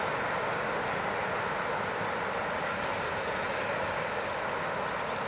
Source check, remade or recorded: recorded